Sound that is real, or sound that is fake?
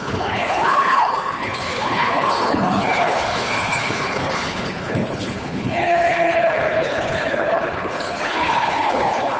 fake